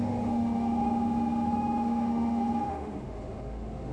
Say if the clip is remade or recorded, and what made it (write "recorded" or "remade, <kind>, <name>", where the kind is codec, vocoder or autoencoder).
remade, autoencoder, DAC-VAE